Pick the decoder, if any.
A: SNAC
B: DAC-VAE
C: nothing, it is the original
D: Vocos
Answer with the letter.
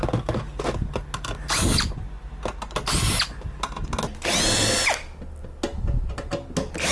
C